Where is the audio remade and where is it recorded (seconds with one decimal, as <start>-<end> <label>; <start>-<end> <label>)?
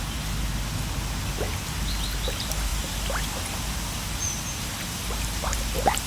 0.0-6.1 recorded